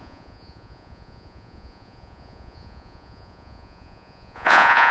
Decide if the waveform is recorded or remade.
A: remade